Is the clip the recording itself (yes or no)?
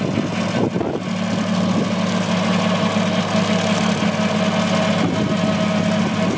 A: yes